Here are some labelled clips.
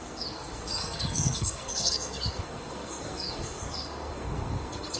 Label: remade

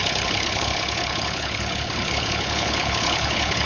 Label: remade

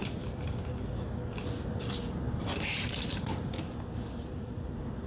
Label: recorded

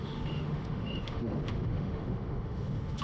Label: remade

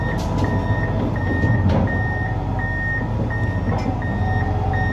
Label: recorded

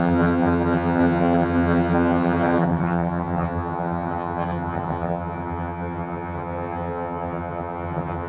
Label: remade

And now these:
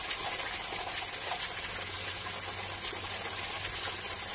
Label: recorded